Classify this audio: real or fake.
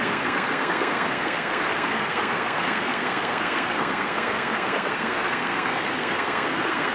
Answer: fake